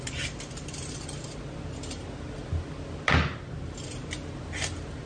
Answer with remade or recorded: recorded